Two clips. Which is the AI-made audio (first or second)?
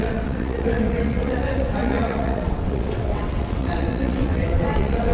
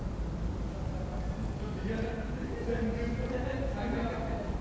first